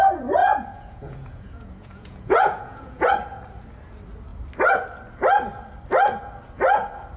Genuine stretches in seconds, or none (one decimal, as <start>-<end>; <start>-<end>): 0.0-0.4; 3.1-7.2